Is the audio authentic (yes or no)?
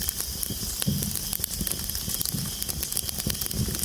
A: yes